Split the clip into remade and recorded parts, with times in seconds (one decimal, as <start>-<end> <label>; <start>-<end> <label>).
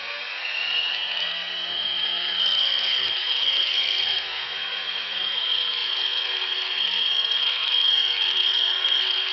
0.0-9.3 remade